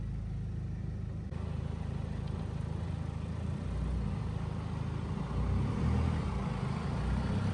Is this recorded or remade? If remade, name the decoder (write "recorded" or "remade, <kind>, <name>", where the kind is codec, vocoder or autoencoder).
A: recorded